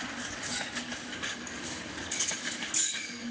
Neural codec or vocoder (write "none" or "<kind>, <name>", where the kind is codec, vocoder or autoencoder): codec, DAC